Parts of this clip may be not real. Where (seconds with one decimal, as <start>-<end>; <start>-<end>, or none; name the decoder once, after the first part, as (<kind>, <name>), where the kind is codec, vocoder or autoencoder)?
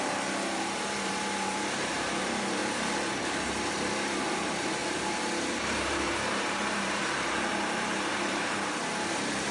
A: 0.0-9.5 (vocoder, BigVGAN v2)